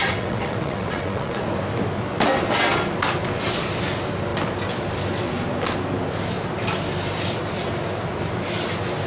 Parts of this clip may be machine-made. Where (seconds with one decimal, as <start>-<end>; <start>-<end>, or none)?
0.0-1.4